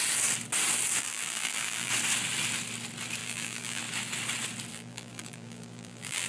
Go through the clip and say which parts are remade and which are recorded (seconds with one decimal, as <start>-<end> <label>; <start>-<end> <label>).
0.0-1.0 recorded; 1.0-1.9 remade; 1.9-3.2 recorded; 3.2-3.8 remade; 3.8-4.7 recorded; 4.7-6.3 remade